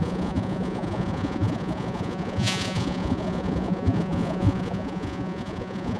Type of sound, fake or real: fake